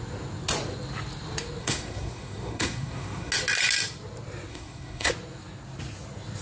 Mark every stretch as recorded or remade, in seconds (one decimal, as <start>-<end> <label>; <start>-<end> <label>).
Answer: 0.0-1.6 recorded; 1.6-3.3 remade; 3.3-4.5 recorded; 4.5-5.1 remade; 5.1-6.4 recorded